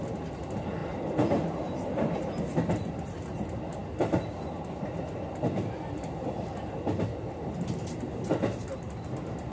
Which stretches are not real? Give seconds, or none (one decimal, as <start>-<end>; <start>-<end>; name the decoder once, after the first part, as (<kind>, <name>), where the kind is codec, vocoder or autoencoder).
none